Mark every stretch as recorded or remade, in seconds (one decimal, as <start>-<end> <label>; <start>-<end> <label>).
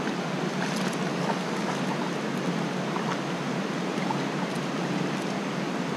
0.0-1.1 recorded; 1.1-1.8 remade; 1.8-6.0 recorded